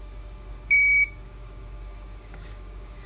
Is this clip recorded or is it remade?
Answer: remade